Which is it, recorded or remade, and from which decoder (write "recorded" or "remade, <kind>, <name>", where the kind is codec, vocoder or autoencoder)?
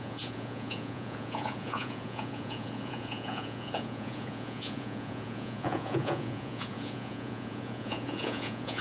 remade, vocoder, Vocos